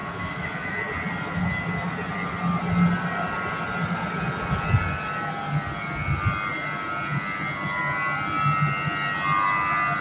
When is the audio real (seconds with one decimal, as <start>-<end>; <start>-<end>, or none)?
0.8-10.0